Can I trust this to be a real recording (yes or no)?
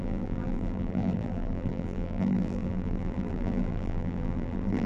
no